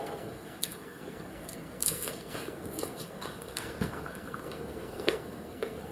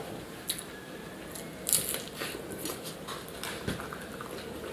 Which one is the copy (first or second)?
first